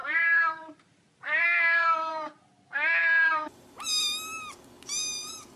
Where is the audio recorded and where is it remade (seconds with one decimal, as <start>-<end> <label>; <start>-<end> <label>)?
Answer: 0.0-2.5 remade; 2.5-3.0 recorded; 3.0-3.8 remade; 3.8-5.6 recorded